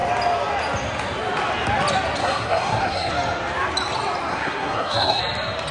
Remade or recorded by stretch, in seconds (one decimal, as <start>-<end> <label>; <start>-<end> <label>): 0.0-2.2 recorded; 2.2-3.1 remade; 3.1-4.3 recorded; 4.3-5.2 remade; 5.2-5.7 recorded